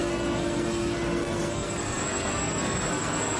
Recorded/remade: remade